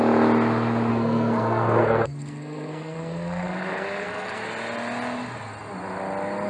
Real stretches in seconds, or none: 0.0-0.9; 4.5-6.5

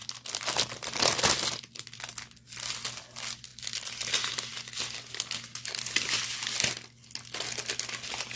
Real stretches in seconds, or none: 0.0-8.4

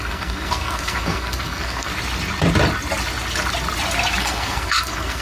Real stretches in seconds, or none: 1.9-4.2

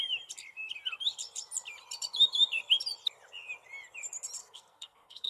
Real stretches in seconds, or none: 0.0-4.4

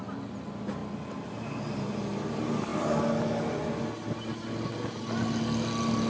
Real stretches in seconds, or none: 0.0-6.1